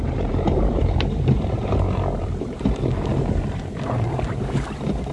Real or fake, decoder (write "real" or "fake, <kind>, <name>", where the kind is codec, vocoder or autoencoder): fake, vocoder, BigVGAN v2